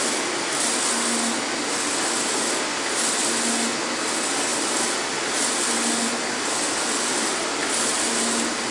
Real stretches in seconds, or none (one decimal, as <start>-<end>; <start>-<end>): 0.0-8.7

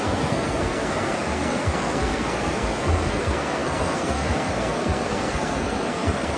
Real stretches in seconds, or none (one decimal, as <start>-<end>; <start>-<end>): none

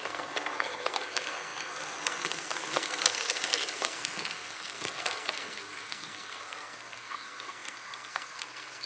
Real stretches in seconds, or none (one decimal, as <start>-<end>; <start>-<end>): none

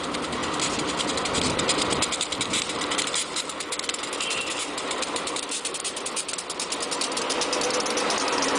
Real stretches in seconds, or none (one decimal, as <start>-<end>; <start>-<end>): 0.0-8.6